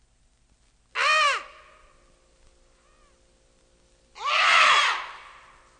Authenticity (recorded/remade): recorded